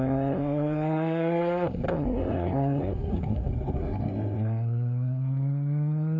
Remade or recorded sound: remade